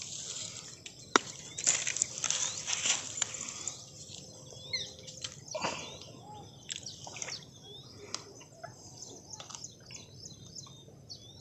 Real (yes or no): yes